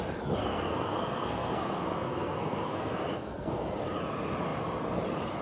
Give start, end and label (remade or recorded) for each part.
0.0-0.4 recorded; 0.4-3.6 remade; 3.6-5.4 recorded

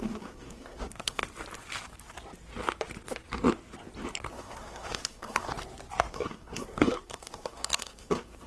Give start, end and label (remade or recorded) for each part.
0.0-1.2 remade; 1.2-4.3 recorded; 4.3-5.5 remade; 5.5-6.1 recorded; 6.1-8.5 remade

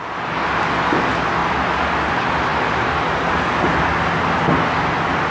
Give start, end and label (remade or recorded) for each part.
0.0-5.3 recorded

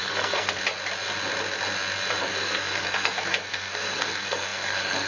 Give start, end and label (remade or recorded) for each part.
0.0-0.6 remade; 0.6-2.2 recorded; 2.2-5.1 remade

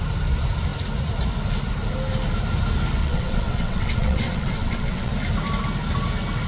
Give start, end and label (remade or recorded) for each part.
0.0-3.0 recorded; 3.0-5.1 remade; 5.1-6.5 recorded

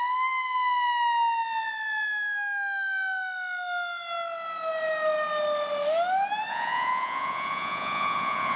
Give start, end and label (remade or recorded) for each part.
0.0-6.5 recorded; 6.5-8.6 remade